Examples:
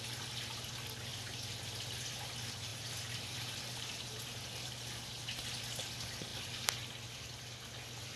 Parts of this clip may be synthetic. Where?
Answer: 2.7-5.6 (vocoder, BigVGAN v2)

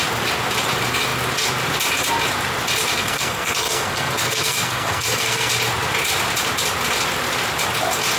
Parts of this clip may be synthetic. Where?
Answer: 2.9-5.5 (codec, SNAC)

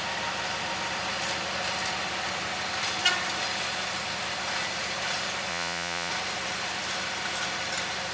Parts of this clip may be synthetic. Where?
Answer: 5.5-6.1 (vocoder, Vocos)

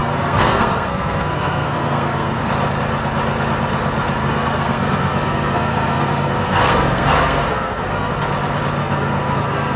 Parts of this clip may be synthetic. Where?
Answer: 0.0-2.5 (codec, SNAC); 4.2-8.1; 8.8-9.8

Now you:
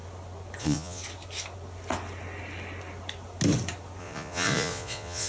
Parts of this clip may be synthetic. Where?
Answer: 0.6-1.0 (vocoder, Vocos); 4.0-5.3

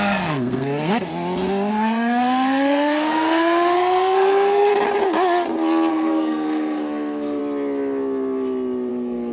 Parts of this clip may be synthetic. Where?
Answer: 0.0-1.1 (codec, SNAC); 1.7-4.7; 5.9-7.4; 8.9-9.3